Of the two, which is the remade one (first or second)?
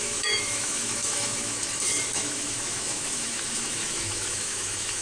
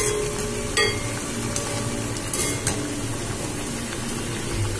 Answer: first